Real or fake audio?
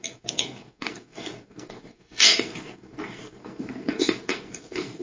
fake